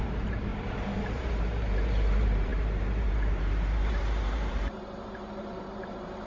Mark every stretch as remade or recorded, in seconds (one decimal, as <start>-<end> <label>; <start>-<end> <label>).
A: 0.0-0.5 remade; 0.5-1.0 recorded; 1.0-6.3 remade